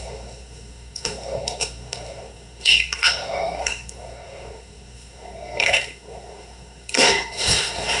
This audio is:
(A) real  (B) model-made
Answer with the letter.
B